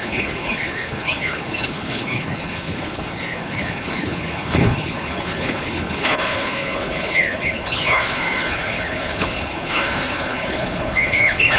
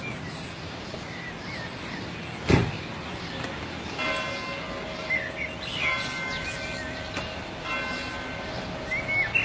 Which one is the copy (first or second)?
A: first